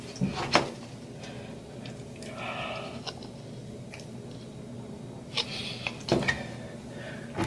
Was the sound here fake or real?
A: real